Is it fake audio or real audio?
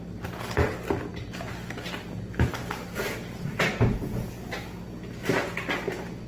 real